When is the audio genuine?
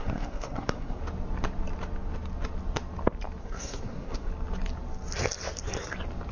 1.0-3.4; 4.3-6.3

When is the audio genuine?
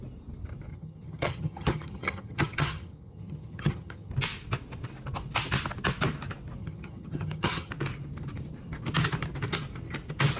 0.0-0.7; 4.1-6.6; 7.7-10.4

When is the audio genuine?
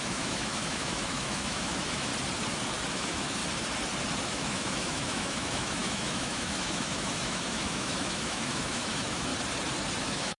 2.1-2.9; 3.4-4.2; 9.3-10.0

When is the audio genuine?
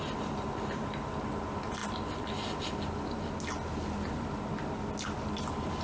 1.8-5.3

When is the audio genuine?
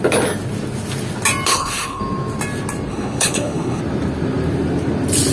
0.0-1.5; 2.0-2.9; 3.8-5.3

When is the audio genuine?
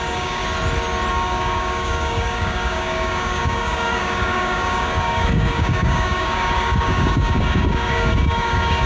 0.4-1.1